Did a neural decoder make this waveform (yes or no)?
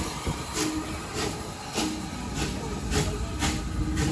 no